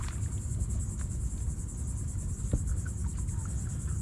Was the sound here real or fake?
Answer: real